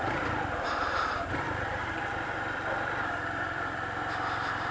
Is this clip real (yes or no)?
no